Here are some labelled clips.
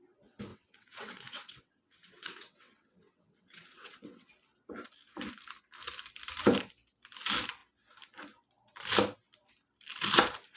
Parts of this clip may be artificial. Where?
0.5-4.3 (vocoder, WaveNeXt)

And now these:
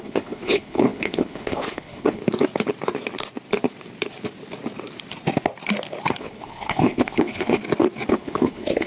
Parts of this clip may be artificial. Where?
0.0-2.2 (codec, HILCodec); 6.2-7.6; 8.1-8.9

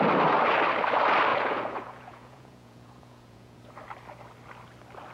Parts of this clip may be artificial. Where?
1.3-3.6 (vocoder, Vocos)